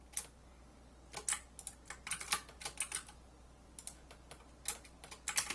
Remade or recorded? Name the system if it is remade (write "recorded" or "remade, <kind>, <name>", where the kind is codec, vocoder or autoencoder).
recorded